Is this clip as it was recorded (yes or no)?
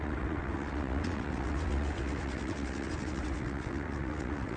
no